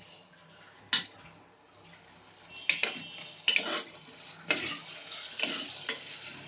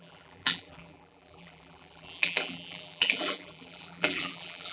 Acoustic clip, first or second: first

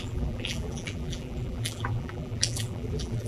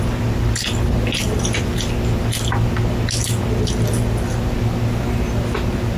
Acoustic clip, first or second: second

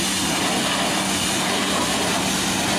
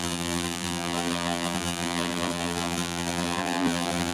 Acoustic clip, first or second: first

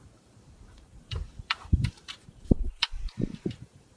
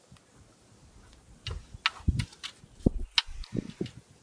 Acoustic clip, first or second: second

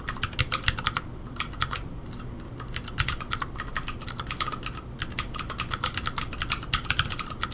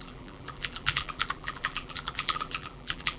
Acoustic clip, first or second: first